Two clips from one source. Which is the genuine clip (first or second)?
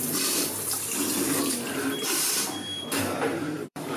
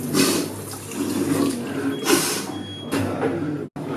second